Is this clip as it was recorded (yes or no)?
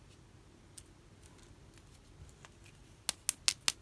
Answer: yes